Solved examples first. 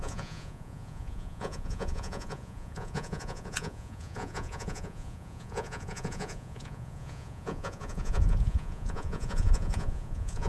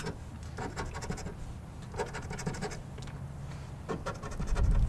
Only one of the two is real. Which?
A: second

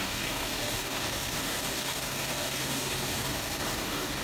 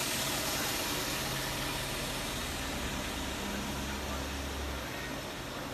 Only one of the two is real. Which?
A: second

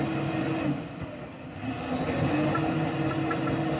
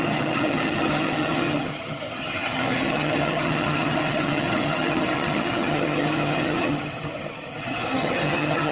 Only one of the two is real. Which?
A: first